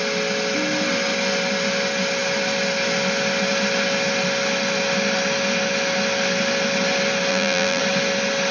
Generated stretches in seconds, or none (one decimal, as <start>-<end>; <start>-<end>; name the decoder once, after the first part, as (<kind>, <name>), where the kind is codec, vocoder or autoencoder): 7.3-7.8 (vocoder, BigVGAN v2)